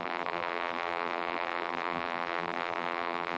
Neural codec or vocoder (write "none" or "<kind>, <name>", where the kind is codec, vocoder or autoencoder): vocoder, BigVGAN v2